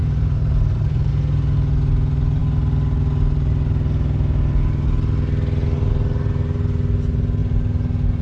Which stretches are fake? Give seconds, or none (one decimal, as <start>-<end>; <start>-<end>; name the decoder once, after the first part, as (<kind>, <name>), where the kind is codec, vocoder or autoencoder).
0.0-1.1 (vocoder, BigVGAN v2)